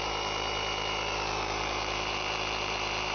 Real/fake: fake